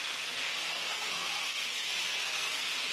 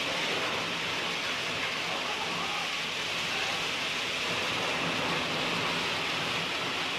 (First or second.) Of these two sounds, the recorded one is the second